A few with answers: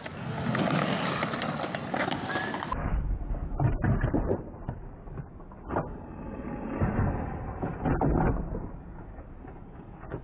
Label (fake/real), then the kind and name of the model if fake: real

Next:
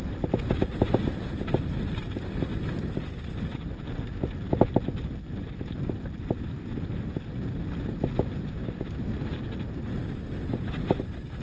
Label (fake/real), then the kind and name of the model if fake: real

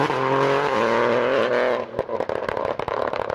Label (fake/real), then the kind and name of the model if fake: real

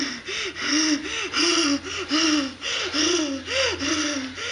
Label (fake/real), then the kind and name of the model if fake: real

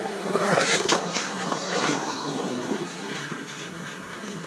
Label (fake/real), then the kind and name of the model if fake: fake, codec, SNAC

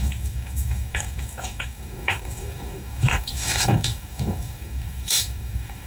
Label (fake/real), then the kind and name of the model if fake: fake, codec, DAC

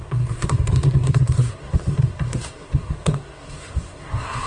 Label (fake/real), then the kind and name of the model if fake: fake, codec, SNAC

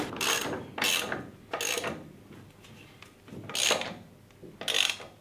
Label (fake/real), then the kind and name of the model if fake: real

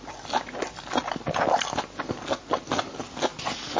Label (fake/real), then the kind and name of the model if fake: real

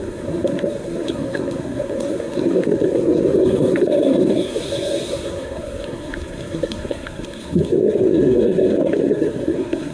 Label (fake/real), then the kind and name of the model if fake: fake, codec, SNAC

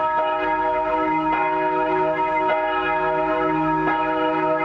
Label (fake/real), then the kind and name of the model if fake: fake, autoencoder, DAC-VAE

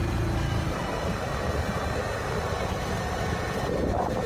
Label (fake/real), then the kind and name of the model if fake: real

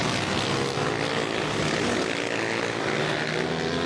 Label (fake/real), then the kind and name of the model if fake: real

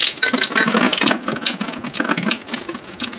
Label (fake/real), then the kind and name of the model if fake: real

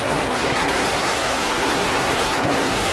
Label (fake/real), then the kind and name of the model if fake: fake, codec, SNAC